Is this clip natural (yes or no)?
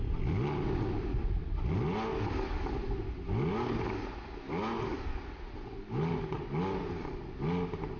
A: yes